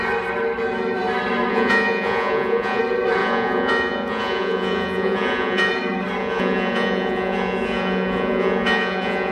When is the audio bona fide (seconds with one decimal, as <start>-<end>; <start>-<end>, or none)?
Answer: 0.0-1.5; 2.8-3.2; 5.7-6.2

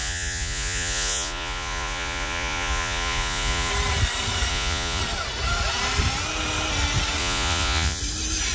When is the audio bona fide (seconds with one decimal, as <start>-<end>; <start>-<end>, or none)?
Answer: 3.7-4.5; 5.0-7.2; 8.0-8.5

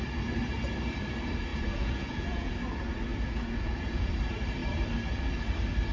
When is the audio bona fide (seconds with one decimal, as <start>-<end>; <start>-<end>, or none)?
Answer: 0.0-1.5; 2.5-3.1; 4.1-5.9

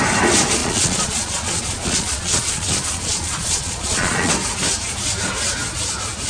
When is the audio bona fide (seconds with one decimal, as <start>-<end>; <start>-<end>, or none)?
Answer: 0.0-0.6; 4.3-6.3

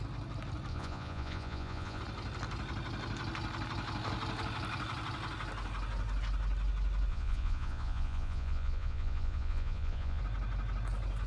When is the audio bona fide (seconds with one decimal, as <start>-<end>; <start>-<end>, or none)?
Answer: 0.0-0.7; 2.0-7.1; 10.2-11.3

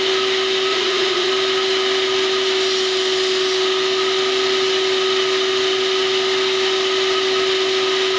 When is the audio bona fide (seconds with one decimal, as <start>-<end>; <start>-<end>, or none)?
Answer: 0.0-0.7; 1.3-8.2

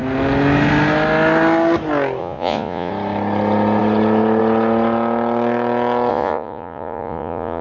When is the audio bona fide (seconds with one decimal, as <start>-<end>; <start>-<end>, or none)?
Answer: 0.0-2.2; 2.9-6.1